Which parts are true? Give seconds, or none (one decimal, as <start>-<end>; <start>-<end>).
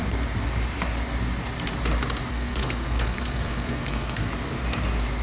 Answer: 0.0-2.3; 4.3-5.2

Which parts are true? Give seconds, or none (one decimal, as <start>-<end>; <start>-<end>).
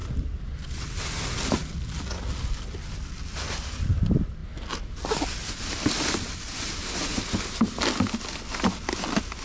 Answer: 0.0-9.4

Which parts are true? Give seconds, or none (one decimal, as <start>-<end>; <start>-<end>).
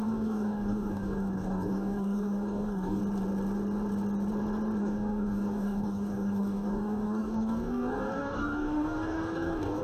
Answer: 3.0-4.8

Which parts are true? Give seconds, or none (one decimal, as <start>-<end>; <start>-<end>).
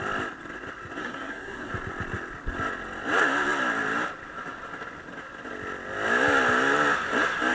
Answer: 0.0-1.0; 1.7-7.5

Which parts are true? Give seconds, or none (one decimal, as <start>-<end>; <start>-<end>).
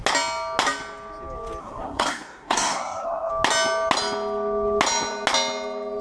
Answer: 0.0-1.6; 3.3-6.0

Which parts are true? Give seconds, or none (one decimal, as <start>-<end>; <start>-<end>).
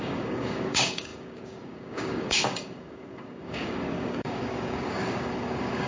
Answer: none